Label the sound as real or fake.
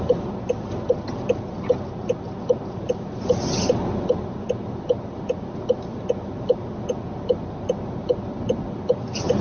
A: real